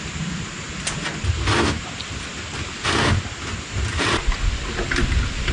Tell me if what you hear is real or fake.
real